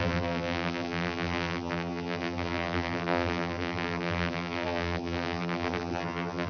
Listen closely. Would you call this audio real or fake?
fake